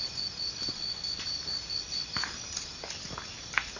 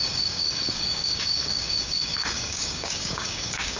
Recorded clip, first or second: first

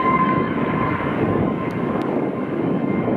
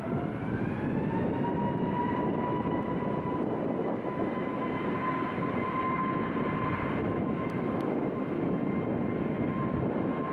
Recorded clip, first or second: second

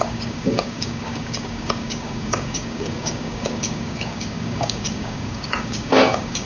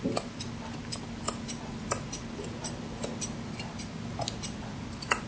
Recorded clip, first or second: second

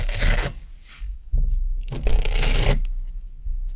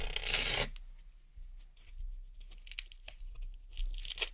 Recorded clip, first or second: second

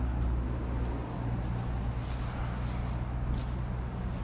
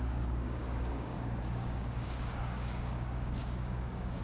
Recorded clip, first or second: first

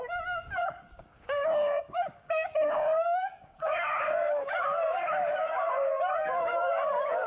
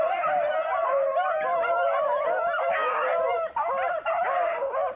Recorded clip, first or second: second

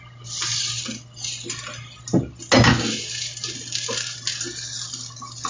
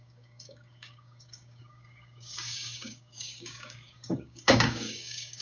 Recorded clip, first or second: first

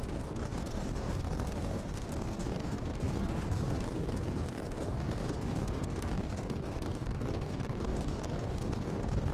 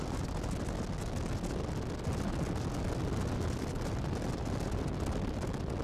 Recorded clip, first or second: second